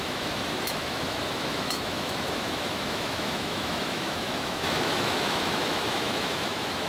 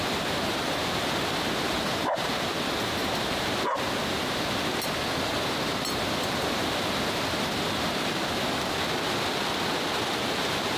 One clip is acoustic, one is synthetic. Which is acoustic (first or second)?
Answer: second